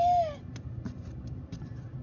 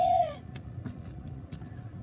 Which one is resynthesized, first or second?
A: second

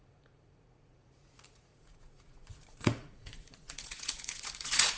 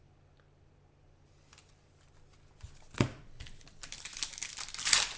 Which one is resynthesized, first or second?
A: first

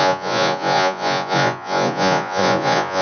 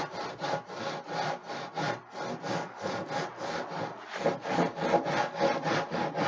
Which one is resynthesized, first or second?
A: first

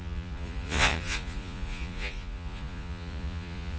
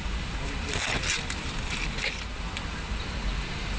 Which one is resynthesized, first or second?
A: first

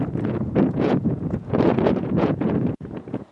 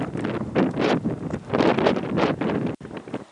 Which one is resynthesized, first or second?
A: first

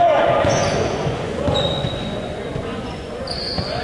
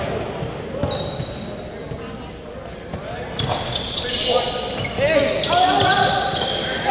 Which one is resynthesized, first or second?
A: first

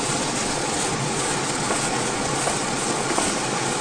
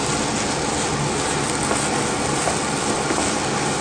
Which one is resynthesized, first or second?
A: first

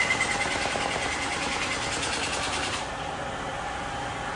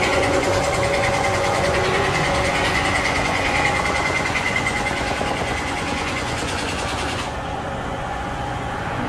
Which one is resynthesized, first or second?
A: second